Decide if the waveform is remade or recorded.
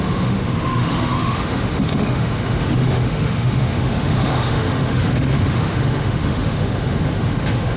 remade